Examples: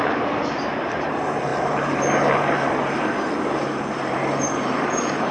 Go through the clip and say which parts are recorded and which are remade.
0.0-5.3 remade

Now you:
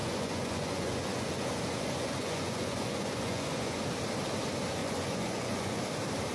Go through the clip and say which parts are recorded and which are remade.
0.0-3.8 remade; 3.8-4.8 recorded; 4.8-5.8 remade; 5.8-6.3 recorded

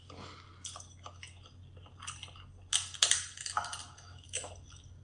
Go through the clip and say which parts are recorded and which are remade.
0.0-3.8 recorded; 3.8-4.5 remade; 4.5-5.0 recorded

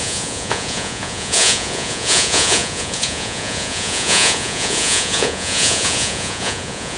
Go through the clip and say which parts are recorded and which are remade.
0.0-7.0 remade

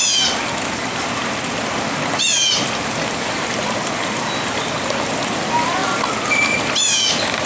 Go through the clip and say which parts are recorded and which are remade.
0.0-7.5 recorded

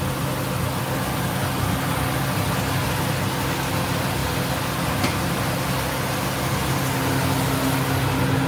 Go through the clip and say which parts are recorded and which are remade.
0.0-8.5 recorded

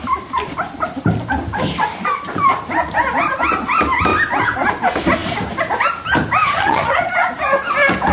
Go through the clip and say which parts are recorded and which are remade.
0.0-6.4 recorded; 6.4-7.1 remade; 7.1-8.1 recorded

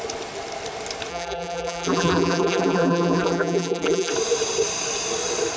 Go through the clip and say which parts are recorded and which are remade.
0.0-1.1 recorded; 1.1-4.1 remade; 4.1-5.6 recorded